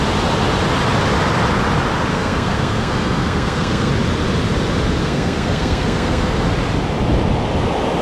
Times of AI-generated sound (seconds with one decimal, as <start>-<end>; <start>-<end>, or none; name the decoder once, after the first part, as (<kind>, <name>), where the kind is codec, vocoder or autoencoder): 2.1-3.9 (codec, SNAC); 5.0-6.4